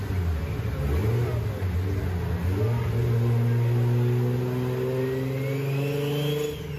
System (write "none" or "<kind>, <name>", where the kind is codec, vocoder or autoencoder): none